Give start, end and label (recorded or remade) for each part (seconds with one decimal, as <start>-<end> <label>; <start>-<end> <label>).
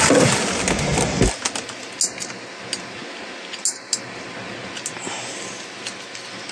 0.0-6.5 recorded